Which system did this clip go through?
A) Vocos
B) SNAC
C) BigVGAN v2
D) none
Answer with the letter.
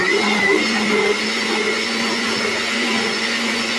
A